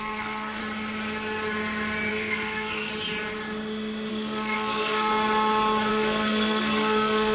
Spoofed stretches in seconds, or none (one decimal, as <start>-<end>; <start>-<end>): 0.0-0.6; 2.1-2.9; 4.1-5.1; 5.9-7.3